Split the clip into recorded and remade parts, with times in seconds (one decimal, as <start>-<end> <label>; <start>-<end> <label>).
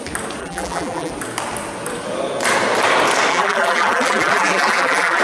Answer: 0.0-0.4 recorded; 0.4-1.1 remade; 1.1-3.3 recorded; 3.3-5.2 remade